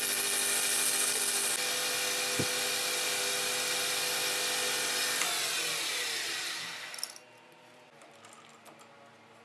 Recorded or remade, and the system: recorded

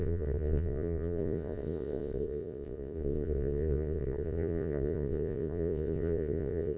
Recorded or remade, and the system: remade, vocoder, Vocos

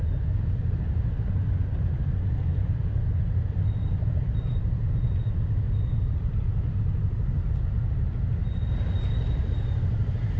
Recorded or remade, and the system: recorded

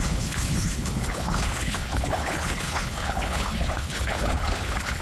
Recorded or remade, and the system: remade, codec, HILCodec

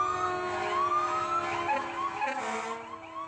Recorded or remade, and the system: recorded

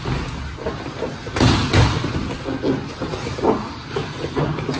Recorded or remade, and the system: recorded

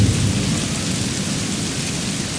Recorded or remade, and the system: recorded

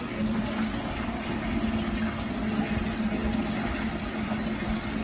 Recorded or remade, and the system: recorded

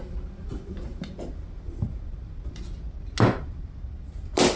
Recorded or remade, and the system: recorded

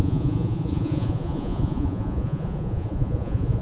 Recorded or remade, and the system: remade, vocoder, Vocos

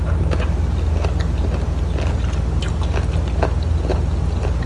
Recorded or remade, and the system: recorded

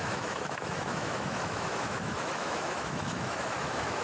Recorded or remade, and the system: remade, autoencoder, DAC-VAE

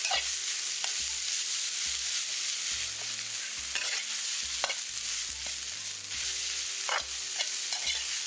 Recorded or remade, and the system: recorded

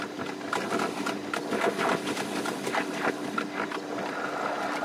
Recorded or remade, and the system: recorded